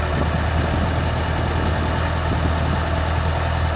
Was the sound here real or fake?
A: real